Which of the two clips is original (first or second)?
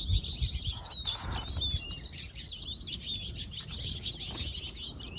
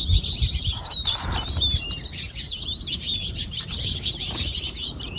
first